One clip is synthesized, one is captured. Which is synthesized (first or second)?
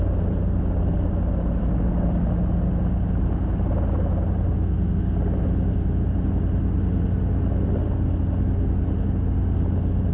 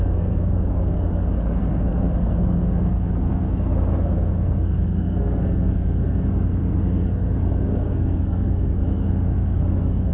second